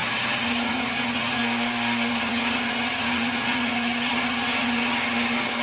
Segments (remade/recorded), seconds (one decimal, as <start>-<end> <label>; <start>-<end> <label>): 0.0-1.4 remade; 1.4-2.1 recorded; 2.1-5.6 remade